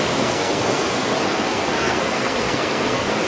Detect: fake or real fake